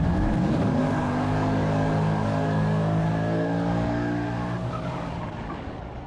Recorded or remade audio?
remade